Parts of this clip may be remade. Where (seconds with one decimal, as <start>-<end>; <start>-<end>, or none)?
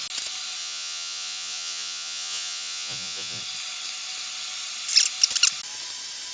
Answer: 0.6-3.4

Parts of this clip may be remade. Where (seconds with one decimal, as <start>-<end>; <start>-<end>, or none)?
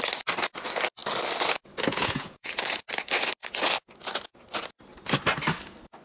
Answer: 1.9-2.5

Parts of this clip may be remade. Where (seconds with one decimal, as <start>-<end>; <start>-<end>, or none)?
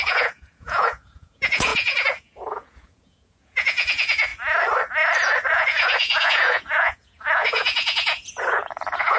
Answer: 0.0-4.3; 5.5-9.2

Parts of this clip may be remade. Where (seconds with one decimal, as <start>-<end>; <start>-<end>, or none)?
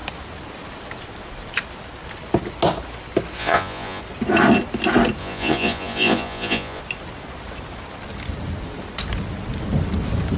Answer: 3.4-4.0; 5.2-6.8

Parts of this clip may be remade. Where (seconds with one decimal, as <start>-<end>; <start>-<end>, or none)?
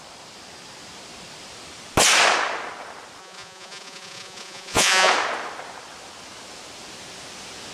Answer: 3.2-5.1